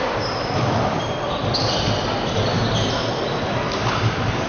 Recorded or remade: recorded